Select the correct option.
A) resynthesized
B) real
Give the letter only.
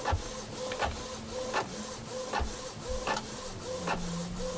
B